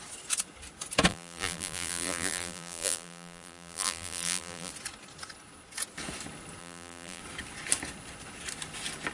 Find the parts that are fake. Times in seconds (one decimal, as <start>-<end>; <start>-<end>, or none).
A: 1.1-4.7; 6.6-7.2